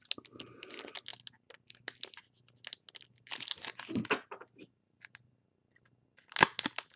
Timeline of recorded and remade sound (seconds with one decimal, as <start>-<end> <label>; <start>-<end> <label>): 0.0-7.0 recorded

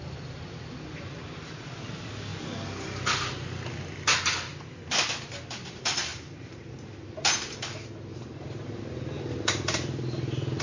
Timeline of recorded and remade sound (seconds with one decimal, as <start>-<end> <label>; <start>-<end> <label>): 0.0-6.1 recorded; 6.1-6.7 remade; 6.7-8.1 recorded; 8.1-8.8 remade; 8.8-10.6 recorded

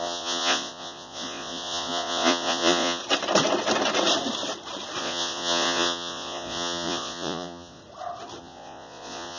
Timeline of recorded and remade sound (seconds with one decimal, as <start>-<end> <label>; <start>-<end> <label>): 0.0-3.0 remade; 3.0-5.0 recorded; 5.0-7.8 remade; 7.8-8.4 recorded; 8.4-9.4 remade

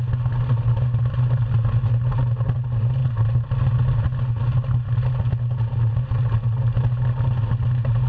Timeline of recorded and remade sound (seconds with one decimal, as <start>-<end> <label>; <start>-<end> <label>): 0.0-8.1 recorded

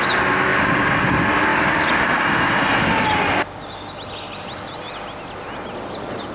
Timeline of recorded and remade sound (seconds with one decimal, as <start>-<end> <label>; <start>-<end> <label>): 0.0-6.3 recorded